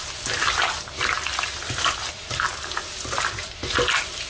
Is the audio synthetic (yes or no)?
no